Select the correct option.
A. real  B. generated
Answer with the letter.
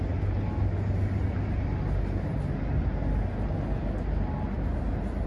A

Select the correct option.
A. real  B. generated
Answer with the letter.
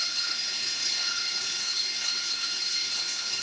B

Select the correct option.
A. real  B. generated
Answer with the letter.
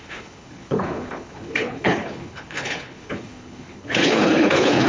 B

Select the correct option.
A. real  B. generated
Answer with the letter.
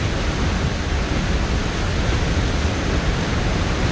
A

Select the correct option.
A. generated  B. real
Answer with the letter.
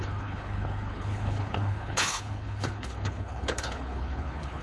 A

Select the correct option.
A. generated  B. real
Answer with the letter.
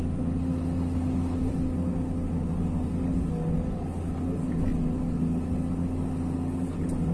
B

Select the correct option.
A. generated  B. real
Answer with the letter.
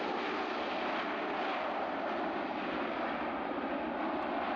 B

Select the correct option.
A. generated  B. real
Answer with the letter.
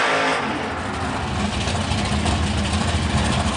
B